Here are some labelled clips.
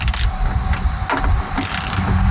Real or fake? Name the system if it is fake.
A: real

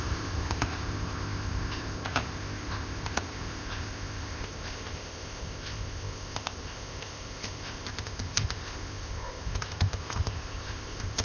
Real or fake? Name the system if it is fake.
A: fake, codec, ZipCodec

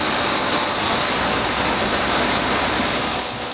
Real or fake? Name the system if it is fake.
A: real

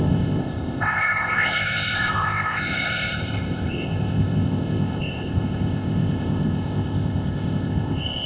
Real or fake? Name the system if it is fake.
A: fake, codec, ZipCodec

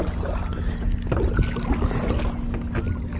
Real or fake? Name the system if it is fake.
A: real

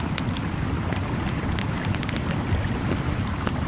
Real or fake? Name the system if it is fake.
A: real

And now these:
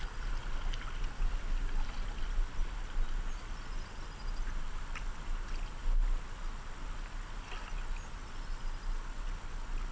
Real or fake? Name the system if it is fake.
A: real